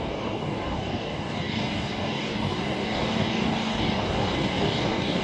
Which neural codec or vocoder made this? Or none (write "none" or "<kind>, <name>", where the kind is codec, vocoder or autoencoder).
codec, DAC